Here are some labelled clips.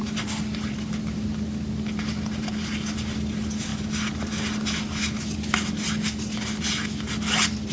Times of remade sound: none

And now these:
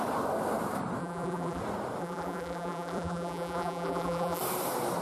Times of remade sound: 1.0-1.6; 2.0-4.4

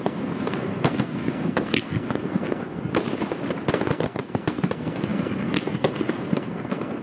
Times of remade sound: 0.0-2.9; 3.7-7.0

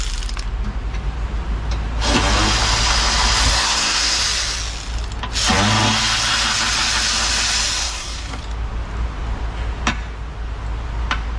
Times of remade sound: 3.5-4.2; 7.8-8.4

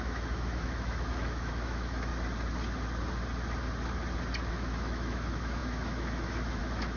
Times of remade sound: 0.0-2.1; 4.5-7.0

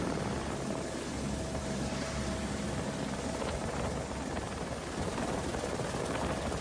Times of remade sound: none

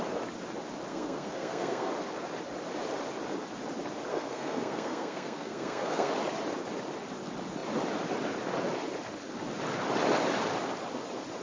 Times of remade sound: 0.9-1.9; 4.1-6.1

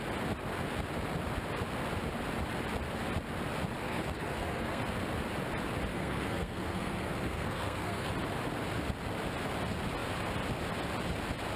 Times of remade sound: 3.8-4.8; 5.9-8.1